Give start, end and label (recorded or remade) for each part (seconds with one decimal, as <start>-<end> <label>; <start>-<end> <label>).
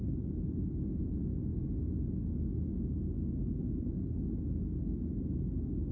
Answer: 0.0-5.9 recorded